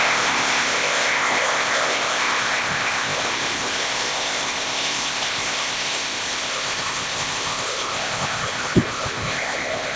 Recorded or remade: remade